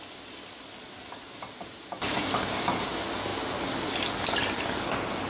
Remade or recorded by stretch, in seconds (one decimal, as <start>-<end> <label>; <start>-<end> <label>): 0.0-5.3 recorded